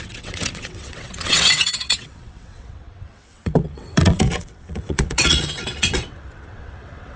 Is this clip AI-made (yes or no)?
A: yes